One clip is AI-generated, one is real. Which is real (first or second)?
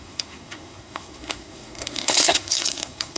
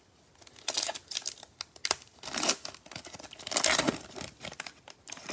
second